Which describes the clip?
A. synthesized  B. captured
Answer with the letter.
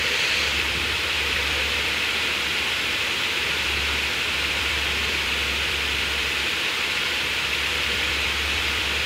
A